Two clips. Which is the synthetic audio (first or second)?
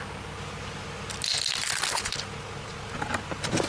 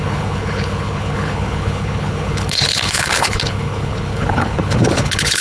second